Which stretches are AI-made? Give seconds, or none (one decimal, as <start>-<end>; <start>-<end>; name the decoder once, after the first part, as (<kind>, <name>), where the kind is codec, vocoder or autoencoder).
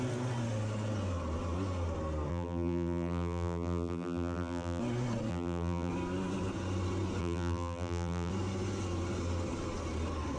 2.3-4.8 (vocoder, BigVGAN v2); 5.3-5.9; 7.2-8.3